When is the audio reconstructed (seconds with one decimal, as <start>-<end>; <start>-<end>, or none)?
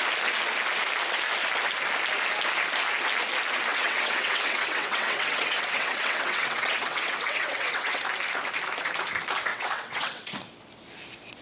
3.7-8.0; 9.5-10.4